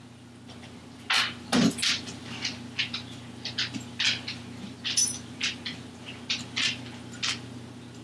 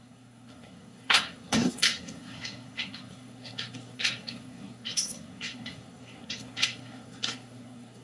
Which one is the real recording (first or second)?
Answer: first